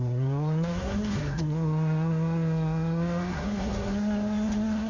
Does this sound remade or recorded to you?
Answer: remade